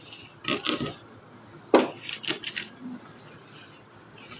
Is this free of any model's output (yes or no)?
yes